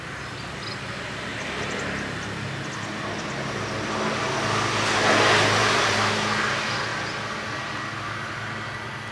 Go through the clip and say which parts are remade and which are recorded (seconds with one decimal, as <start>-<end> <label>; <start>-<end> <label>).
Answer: 0.0-5.6 recorded; 5.6-6.1 remade; 6.1-9.1 recorded